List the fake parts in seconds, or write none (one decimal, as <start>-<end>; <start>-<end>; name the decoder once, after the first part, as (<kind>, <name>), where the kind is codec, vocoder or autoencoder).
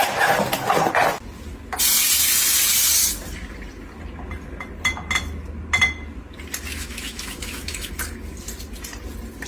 6.7-7.9 (autoencoder, DAC-VAE)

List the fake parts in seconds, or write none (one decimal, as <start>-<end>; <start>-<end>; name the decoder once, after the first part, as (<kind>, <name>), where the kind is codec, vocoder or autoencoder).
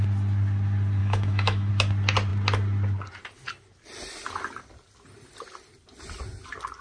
1.0-1.7 (autoencoder, DAC-VAE)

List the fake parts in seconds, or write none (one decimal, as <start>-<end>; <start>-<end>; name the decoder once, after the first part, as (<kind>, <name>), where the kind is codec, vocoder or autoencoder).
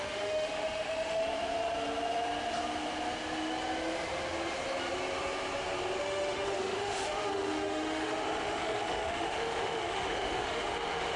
0.0-1.2 (autoencoder, DAC-VAE); 6.0-11.2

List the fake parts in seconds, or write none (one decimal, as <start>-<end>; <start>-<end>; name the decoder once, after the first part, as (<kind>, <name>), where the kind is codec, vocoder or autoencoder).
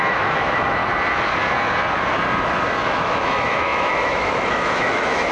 0.0-0.8 (autoencoder, DAC-VAE); 2.9-5.3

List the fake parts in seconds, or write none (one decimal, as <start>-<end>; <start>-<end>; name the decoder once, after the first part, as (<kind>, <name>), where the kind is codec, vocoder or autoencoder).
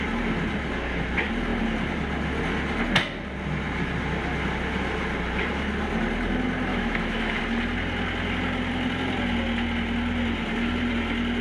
6.7-7.4 (autoencoder, DAC-VAE)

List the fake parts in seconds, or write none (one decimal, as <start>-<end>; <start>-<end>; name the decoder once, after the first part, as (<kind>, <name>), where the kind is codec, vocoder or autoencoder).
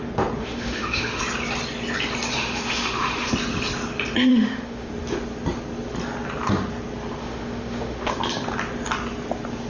0.4-1.2 (autoencoder, DAC-VAE); 2.3-3.3; 4.3-4.9; 7.2-8.1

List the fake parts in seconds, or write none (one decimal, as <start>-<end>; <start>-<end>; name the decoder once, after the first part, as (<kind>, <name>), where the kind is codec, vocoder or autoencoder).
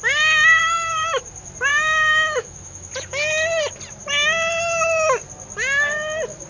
0.6-1.2 (autoencoder, DAC-VAE); 1.7-2.9